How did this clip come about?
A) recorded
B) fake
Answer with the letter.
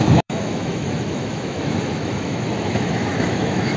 B